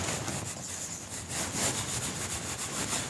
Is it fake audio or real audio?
real